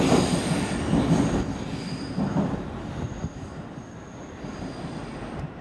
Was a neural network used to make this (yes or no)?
no